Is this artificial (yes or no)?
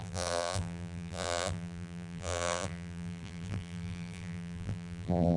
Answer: yes